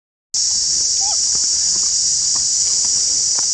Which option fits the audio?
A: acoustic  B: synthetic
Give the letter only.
A